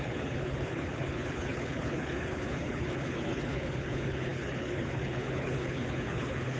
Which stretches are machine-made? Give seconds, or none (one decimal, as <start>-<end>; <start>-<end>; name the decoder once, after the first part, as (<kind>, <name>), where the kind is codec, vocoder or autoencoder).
0.0-6.6 (codec, HILCodec)